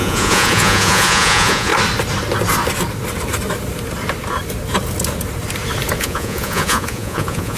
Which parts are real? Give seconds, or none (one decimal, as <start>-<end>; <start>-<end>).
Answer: 1.7-6.0

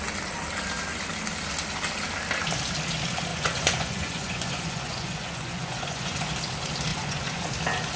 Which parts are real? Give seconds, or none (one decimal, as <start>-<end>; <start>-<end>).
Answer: 0.0-3.3; 6.3-6.9; 7.5-8.0